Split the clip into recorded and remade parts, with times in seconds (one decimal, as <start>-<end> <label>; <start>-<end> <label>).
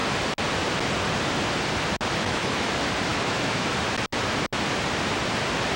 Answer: 0.0-2.2 recorded; 2.2-2.7 remade; 2.7-3.1 recorded; 3.1-3.7 remade; 3.7-5.8 recorded